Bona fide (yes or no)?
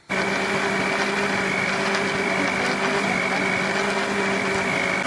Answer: yes